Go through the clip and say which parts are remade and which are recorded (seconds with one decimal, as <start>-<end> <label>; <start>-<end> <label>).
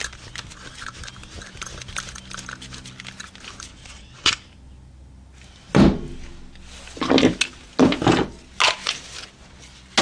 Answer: 0.0-3.7 recorded; 3.7-4.3 remade; 4.3-10.0 recorded